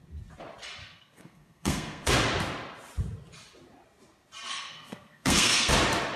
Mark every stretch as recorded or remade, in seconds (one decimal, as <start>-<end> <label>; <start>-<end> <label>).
0.0-0.8 recorded; 0.8-2.1 remade; 2.1-4.5 recorded; 4.5-5.7 remade; 5.7-6.2 recorded